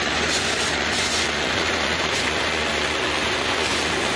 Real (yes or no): no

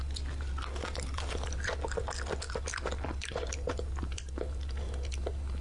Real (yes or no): yes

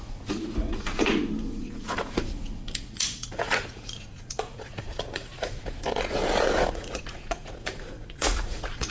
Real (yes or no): no